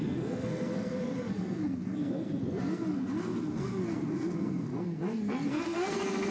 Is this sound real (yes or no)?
no